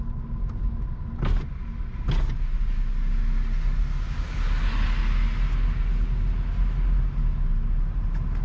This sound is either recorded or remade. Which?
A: recorded